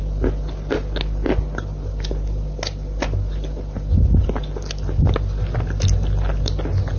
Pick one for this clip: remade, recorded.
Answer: recorded